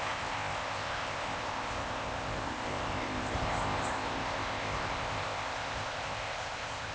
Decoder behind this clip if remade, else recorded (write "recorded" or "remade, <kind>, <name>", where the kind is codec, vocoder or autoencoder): remade, codec, ZipCodec